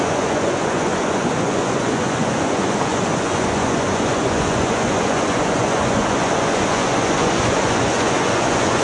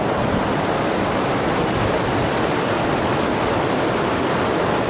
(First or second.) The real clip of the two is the second